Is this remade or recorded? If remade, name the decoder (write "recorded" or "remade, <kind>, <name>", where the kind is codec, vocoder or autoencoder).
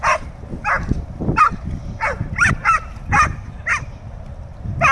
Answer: recorded